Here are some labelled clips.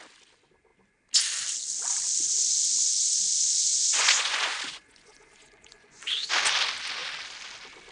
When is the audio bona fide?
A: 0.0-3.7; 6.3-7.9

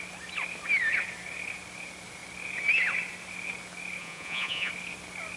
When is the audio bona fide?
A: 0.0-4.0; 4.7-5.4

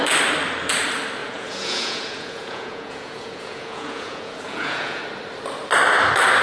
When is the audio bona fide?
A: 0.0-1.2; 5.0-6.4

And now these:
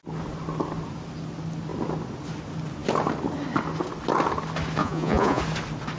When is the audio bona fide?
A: 0.0-4.8; 5.4-6.0

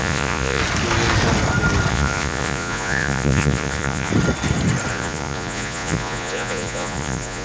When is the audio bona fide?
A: 0.6-1.9; 4.1-4.9

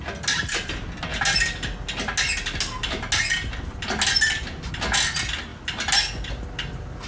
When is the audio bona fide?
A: 0.0-7.1

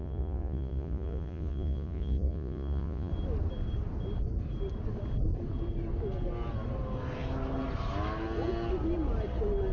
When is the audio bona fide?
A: 3.1-9.7